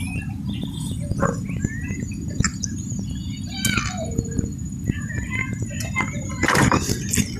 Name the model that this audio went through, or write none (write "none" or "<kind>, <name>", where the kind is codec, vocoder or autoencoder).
none